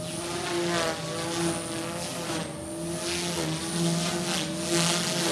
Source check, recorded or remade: recorded